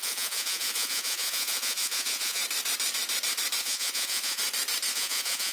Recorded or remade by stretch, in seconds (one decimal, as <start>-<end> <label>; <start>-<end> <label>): 0.0-2.4 remade; 2.4-3.6 recorded; 3.6-4.4 remade; 4.4-4.9 recorded; 4.9-5.5 remade